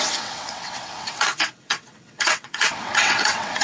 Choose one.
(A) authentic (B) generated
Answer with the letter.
B